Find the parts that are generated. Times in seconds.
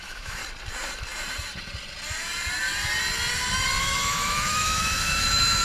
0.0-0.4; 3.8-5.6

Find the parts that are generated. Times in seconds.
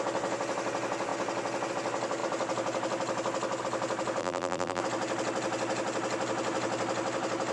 4.2-4.8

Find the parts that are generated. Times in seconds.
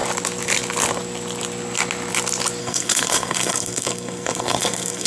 2.6-5.1